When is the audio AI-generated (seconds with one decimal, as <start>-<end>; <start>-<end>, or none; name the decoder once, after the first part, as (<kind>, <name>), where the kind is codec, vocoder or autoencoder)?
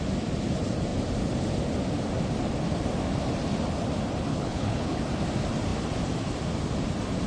4.3-5.0 (codec, HILCodec)